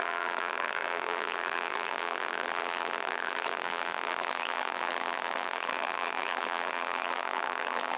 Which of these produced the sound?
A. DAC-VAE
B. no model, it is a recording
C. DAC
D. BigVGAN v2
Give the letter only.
D